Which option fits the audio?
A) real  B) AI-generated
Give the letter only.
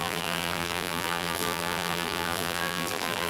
B